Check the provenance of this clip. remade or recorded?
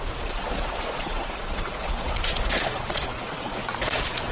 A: remade